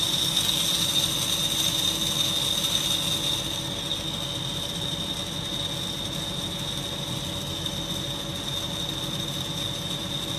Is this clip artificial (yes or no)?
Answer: no